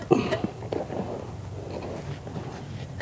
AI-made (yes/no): no